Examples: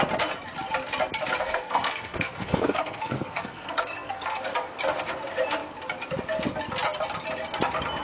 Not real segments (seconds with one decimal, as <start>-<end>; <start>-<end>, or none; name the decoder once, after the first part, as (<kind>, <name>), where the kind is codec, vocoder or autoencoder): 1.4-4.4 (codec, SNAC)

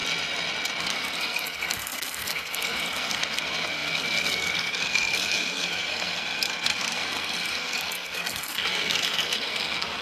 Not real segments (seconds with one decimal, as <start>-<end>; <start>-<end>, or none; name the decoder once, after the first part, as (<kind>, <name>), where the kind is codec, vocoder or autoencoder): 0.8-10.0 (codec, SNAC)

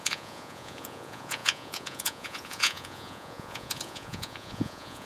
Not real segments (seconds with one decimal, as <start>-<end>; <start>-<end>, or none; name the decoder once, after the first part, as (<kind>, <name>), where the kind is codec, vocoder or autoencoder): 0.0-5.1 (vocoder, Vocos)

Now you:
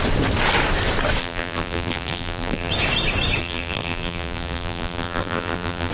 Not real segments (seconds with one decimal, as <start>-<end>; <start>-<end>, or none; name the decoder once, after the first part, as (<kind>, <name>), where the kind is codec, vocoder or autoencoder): 1.2-2.7 (vocoder, BigVGAN v2); 3.4-5.9

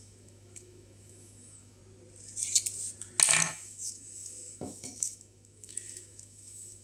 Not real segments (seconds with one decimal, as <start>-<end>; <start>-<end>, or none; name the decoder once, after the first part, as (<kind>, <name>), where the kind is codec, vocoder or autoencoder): 0.0-1.8 (autoencoder, DAC-VAE); 3.4-6.8

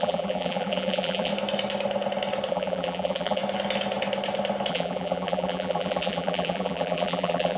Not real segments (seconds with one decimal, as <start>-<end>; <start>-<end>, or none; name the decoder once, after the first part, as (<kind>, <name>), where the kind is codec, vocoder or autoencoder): 0.0-1.3 (vocoder, BigVGAN v2); 2.5-3.4; 4.7-7.6

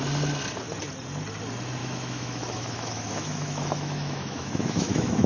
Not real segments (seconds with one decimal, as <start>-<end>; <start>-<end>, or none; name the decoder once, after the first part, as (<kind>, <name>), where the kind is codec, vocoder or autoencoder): 1.8-5.3 (autoencoder, DAC-VAE)